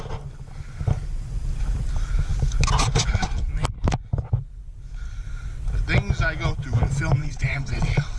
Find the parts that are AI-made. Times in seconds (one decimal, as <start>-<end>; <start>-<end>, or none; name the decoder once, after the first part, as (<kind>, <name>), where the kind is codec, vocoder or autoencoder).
7.2-8.2 (vocoder, WaveNeXt)